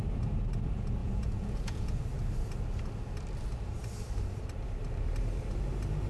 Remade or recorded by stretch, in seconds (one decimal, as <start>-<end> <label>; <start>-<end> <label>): 0.0-1.0 recorded; 1.0-2.0 remade; 2.0-6.1 recorded